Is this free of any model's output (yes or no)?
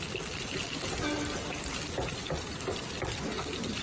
yes